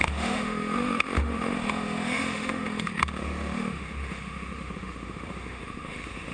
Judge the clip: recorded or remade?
remade